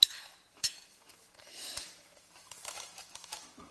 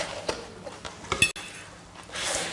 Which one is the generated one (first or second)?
first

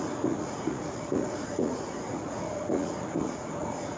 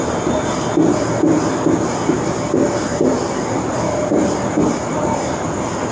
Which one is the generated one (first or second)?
first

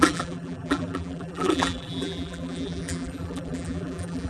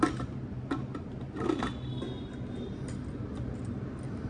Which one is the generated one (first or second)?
first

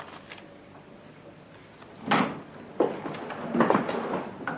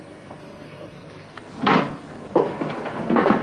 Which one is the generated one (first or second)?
second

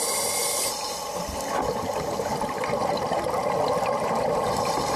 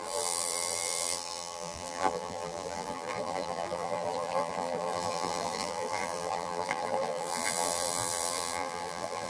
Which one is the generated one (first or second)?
second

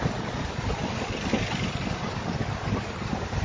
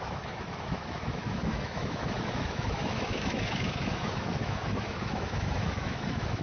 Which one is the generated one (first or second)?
second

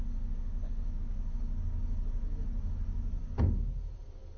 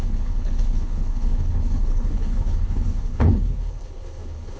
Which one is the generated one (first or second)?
second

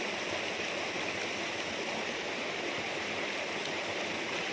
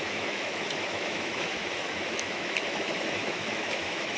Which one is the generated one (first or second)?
second